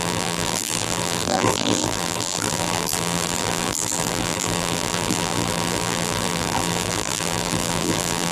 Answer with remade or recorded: remade